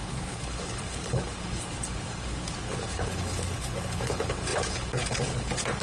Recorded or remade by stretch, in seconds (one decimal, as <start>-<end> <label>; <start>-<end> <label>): 0.0-5.8 remade